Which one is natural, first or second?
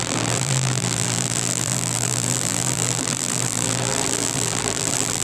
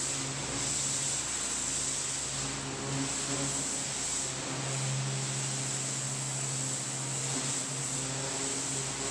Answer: second